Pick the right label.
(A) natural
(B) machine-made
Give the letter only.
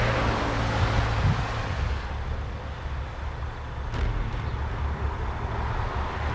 A